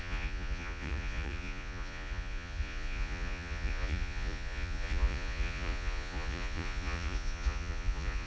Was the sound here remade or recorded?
remade